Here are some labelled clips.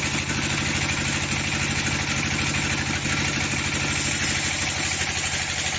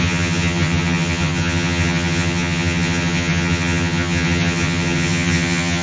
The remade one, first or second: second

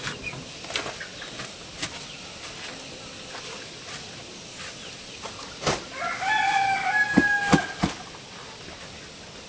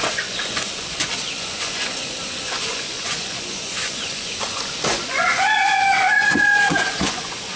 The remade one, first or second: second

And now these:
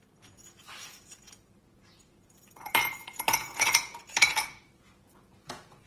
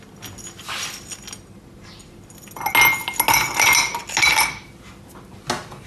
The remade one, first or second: first